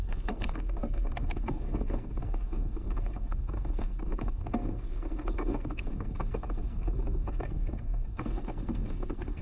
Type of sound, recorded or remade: remade